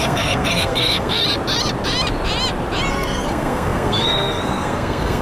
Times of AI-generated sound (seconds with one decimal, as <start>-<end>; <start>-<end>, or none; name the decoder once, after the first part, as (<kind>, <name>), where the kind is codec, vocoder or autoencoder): 0.0-1.2 (codec, SNAC); 2.9-5.2